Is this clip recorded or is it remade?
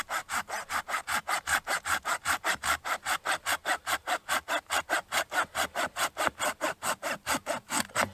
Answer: remade